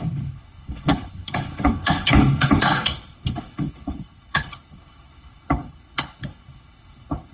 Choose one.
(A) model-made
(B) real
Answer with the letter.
A